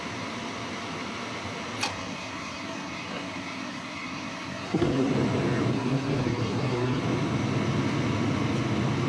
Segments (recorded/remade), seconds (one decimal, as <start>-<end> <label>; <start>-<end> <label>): 0.0-1.9 recorded; 1.9-5.1 remade; 5.1-5.7 recorded; 5.7-7.0 remade; 7.0-9.1 recorded